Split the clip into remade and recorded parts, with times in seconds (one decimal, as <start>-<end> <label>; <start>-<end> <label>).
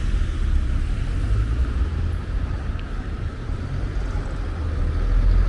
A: 0.0-5.5 recorded